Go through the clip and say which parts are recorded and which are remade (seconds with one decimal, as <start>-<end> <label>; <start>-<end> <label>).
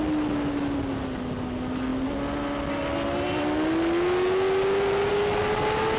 0.0-6.0 recorded